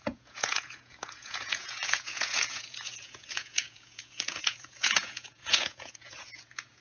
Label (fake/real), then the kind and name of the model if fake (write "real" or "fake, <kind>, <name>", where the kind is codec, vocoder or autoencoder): fake, vocoder, Vocos